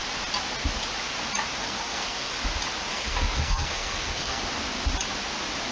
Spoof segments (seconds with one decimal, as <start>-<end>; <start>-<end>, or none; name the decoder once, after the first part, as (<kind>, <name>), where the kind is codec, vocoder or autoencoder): 1.6-2.4 (codec, SNAC); 2.9-4.4